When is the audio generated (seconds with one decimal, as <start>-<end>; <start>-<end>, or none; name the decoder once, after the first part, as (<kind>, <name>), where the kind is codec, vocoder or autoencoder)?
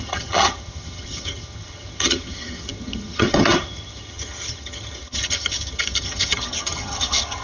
0.0-7.4 (vocoder, HiFi-GAN)